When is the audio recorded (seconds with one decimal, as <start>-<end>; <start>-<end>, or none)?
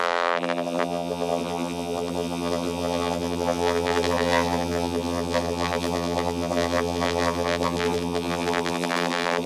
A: none